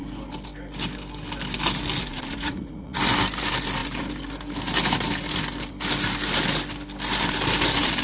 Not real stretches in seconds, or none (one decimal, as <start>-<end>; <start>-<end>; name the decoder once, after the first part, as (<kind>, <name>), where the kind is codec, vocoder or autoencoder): 2.1-3.0 (vocoder, Vocos)